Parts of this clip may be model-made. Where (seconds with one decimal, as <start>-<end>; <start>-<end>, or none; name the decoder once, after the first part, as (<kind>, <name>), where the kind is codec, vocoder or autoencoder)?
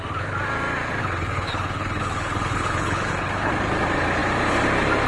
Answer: 1.0-3.5 (codec, HILCodec)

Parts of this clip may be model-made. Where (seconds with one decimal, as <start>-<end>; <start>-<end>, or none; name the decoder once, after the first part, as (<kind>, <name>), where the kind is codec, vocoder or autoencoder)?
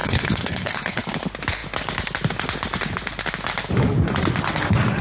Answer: 0.0-1.1 (codec, HILCodec)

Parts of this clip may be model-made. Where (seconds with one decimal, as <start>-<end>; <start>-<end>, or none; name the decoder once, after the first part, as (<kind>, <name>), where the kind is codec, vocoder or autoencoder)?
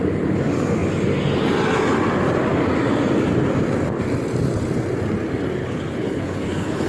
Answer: 5.6-6.9 (codec, HILCodec)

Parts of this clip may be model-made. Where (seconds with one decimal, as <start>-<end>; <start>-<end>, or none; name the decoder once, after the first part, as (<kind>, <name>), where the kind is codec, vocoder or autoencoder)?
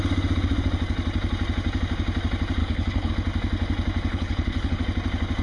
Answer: 2.6-3.1 (codec, HILCodec); 4.1-4.8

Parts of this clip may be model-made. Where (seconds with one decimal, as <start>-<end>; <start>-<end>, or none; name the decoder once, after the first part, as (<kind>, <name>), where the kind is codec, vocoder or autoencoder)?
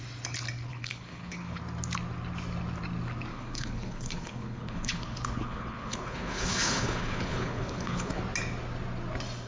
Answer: 0.7-1.6 (codec, HILCodec); 3.3-8.2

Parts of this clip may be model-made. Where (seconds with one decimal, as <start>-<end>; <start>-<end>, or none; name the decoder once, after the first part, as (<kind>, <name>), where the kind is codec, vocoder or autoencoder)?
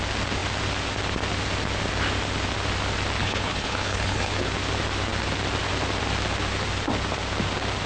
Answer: 3.2-4.3 (codec, HILCodec)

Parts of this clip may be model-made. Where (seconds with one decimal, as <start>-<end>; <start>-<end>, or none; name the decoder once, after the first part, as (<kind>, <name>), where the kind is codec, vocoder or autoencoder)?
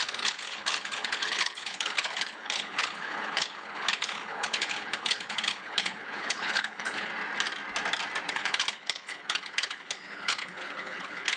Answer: 0.0-7.1 (codec, HILCodec); 8.3-11.4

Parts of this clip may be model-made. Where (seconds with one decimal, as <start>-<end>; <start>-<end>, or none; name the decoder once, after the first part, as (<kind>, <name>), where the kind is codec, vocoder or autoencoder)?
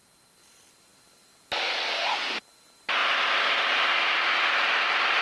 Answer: none